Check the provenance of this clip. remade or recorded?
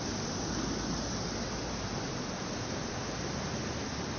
recorded